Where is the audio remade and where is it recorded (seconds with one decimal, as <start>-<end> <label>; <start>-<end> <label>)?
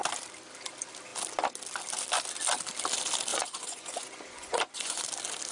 0.0-3.3 recorded; 3.3-5.0 remade; 5.0-5.5 recorded